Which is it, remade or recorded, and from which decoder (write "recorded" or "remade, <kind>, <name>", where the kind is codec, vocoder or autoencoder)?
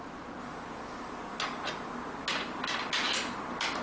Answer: recorded